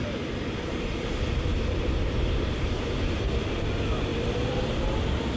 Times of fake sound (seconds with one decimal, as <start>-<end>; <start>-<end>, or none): 1.5-3.5; 4.1-4.7